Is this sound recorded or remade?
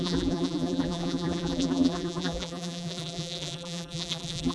remade